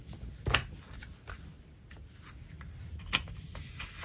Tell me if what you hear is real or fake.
real